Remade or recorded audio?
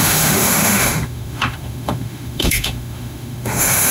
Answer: remade